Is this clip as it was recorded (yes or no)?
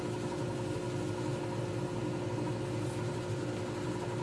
yes